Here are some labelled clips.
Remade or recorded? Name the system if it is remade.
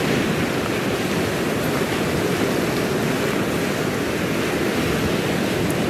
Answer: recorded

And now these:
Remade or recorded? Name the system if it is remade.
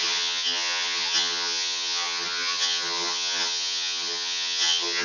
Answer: remade, vocoder, HiFi-GAN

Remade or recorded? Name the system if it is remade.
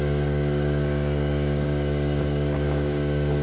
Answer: remade, codec, DAC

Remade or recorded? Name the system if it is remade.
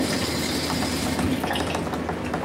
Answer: recorded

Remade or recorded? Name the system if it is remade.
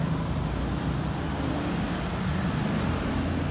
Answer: recorded